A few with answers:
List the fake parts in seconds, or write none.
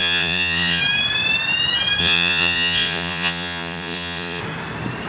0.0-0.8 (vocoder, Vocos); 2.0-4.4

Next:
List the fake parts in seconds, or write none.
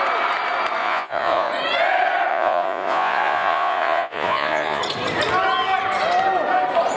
0.8-1.5 (vocoder, Vocos); 2.3-4.8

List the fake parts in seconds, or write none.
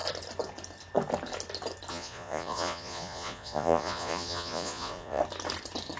1.9-5.2 (vocoder, Vocos)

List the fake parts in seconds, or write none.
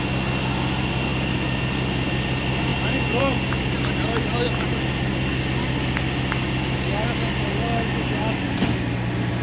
none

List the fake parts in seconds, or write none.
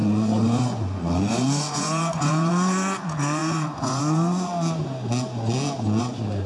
0.0-4.5 (vocoder, Vocos); 6.0-6.5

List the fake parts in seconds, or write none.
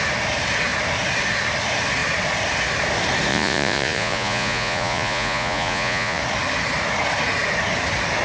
3.3-6.2 (vocoder, Vocos)